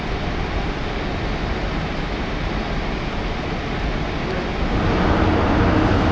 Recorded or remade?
recorded